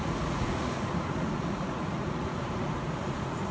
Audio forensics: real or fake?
fake